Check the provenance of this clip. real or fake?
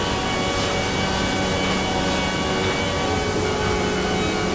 real